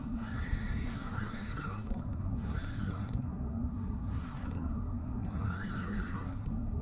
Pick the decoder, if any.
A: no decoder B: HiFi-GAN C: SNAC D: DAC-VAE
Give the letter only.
C